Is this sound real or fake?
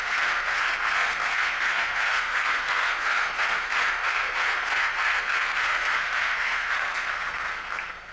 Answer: fake